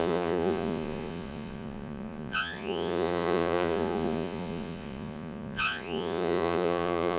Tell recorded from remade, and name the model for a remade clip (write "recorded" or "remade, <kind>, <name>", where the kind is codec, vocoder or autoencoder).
remade, vocoder, Vocos